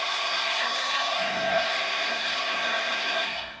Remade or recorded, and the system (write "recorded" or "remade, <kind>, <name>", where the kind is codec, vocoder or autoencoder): remade, codec, SNAC